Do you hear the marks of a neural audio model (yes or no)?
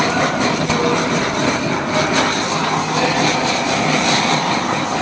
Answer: no